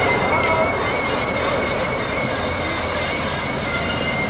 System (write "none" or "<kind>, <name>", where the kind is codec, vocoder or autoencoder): none